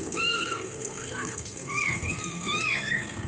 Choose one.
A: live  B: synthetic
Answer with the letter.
B